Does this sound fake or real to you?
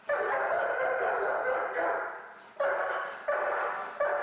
real